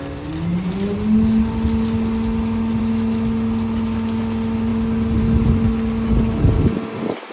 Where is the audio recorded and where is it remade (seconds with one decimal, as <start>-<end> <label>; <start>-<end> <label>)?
0.0-7.3 recorded

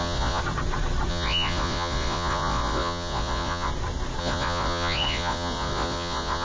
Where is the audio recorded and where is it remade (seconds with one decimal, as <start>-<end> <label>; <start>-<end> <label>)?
0.0-0.4 remade; 0.4-1.1 recorded; 1.1-3.7 remade; 3.7-4.2 recorded; 4.2-6.4 remade

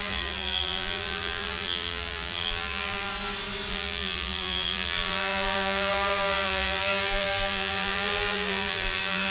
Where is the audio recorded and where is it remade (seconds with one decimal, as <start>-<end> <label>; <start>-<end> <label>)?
0.0-3.1 remade; 3.1-3.7 recorded; 3.7-9.3 remade

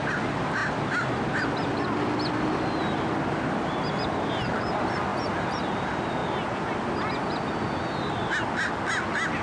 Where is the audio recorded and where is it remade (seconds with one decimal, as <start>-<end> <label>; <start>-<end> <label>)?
0.0-9.4 recorded